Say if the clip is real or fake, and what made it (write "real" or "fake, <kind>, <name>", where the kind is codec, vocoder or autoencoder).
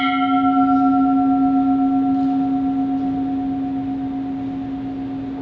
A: real